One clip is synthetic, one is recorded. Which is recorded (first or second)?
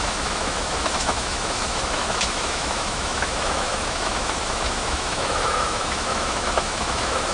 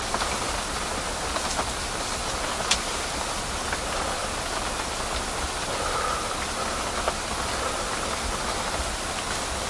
second